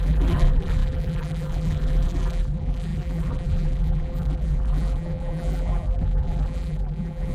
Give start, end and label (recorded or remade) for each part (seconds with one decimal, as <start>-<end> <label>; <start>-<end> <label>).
0.0-7.3 remade